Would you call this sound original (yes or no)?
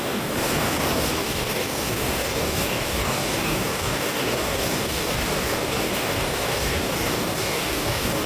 no